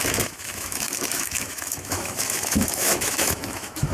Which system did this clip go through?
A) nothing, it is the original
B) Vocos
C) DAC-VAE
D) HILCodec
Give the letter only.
C